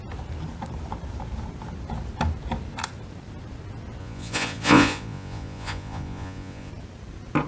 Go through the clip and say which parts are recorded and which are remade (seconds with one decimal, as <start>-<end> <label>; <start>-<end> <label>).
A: 0.0-4.0 recorded; 4.0-6.7 remade; 6.7-7.5 recorded